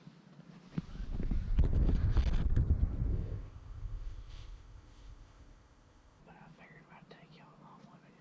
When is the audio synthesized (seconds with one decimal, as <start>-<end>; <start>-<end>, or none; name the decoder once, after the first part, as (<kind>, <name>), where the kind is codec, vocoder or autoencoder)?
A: 3.1-6.2 (codec, ZipCodec)